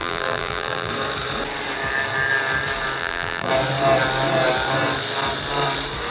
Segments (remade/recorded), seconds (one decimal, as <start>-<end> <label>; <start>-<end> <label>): 0.0-0.9 remade; 0.9-3.0 recorded; 3.0-3.5 remade; 3.5-6.1 recorded